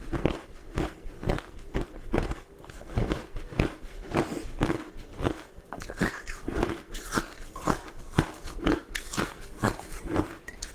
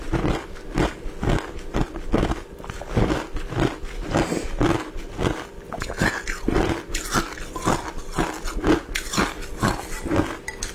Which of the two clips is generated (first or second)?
first